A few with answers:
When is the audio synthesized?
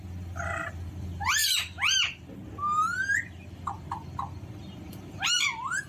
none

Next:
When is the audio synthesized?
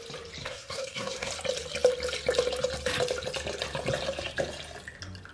0.4-1.3 (codec, SNAC)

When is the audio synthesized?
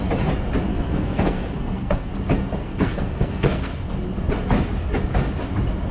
0.7-2.1 (codec, SNAC); 2.6-3.9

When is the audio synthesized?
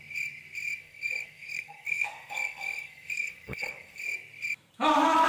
0.8-4.0 (codec, SNAC)